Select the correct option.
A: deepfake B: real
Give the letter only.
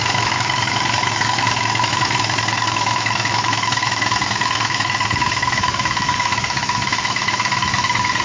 A